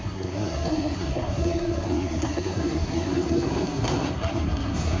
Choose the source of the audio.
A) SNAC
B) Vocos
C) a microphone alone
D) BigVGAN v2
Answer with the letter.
A